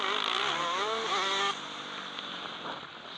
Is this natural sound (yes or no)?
yes